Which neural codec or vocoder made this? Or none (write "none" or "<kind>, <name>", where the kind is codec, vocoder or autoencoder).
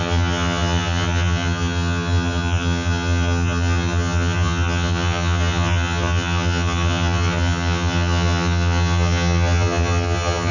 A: vocoder, HiFi-GAN